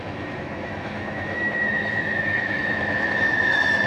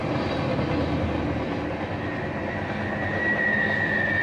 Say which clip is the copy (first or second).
first